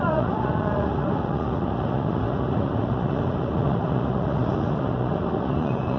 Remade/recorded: remade